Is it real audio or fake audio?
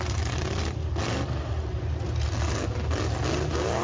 real